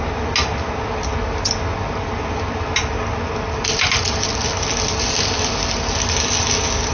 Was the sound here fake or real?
real